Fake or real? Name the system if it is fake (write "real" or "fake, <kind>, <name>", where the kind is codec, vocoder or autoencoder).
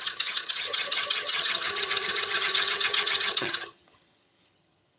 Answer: fake, vocoder, HiFi-GAN